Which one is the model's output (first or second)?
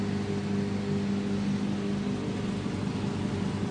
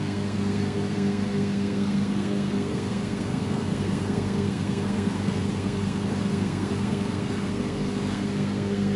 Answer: second